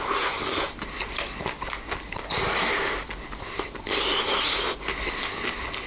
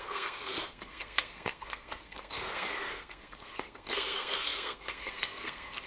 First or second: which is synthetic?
second